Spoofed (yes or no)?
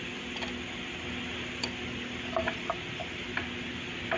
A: no